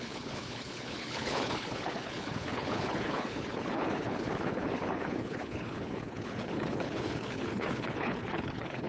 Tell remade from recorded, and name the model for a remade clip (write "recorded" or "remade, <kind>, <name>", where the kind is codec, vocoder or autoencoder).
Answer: remade, codec, HILCodec